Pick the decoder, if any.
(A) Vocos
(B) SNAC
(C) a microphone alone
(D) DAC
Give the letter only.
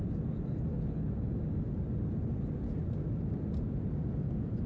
C